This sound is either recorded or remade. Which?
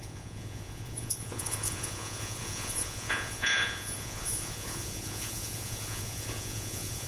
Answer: remade